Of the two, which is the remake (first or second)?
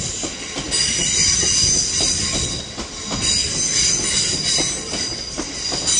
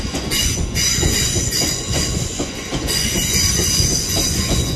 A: second